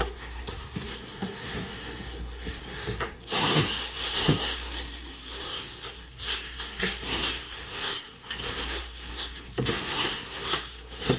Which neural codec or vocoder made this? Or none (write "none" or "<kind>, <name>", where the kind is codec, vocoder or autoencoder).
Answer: codec, SNAC